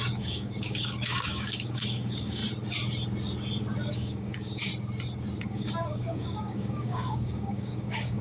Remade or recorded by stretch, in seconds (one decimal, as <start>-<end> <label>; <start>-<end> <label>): 0.0-2.4 remade; 2.4-3.9 recorded; 3.9-4.7 remade; 4.7-5.4 recorded; 5.4-8.2 remade